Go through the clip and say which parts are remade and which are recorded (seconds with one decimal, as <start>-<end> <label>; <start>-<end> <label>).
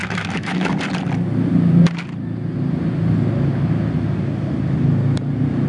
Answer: 0.0-0.7 remade; 0.7-5.7 recorded